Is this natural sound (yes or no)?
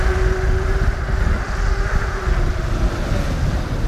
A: yes